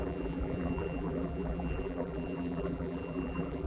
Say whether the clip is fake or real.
fake